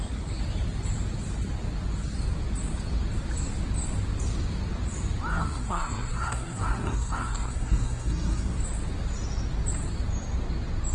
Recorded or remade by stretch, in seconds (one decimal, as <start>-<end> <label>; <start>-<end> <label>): 0.0-5.3 recorded; 5.3-8.6 remade; 8.6-10.9 recorded